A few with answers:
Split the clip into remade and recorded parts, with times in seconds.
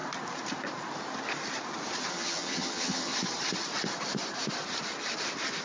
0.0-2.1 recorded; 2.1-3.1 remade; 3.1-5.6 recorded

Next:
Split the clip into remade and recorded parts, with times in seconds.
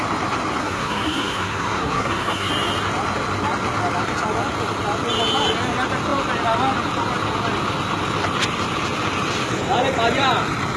0.0-0.6 recorded; 0.6-2.5 remade; 2.5-10.8 recorded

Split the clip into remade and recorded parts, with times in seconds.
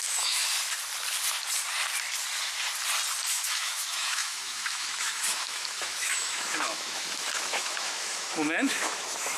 0.0-0.4 remade; 0.4-3.3 recorded; 3.3-9.4 remade